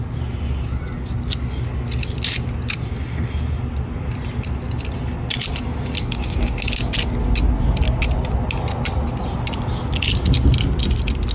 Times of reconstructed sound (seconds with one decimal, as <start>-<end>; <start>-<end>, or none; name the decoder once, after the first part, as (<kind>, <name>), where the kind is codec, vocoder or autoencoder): 6.0-6.6 (codec, DAC)